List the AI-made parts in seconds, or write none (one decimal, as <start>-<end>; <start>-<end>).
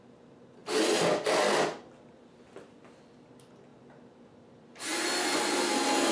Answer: none